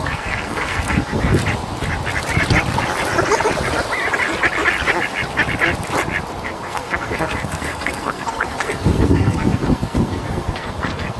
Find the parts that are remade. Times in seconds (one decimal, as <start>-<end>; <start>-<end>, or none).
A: 0.0-1.4; 6.4-11.2